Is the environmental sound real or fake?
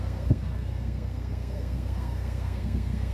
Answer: fake